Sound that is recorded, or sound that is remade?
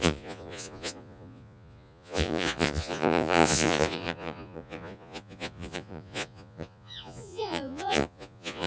remade